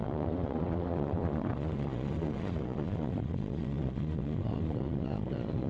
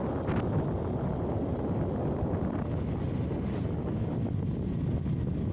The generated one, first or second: first